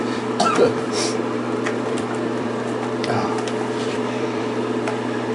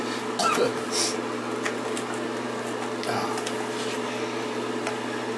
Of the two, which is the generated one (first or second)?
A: first